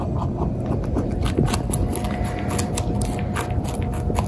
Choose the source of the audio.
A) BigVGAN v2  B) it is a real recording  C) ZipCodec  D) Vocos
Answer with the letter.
B